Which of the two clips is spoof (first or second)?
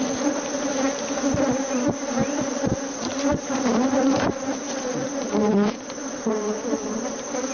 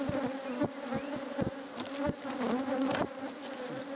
first